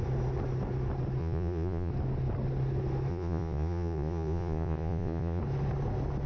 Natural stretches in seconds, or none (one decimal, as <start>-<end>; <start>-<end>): 0.0-1.2; 1.9-3.1; 5.4-6.3